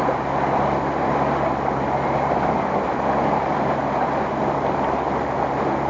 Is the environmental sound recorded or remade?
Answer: recorded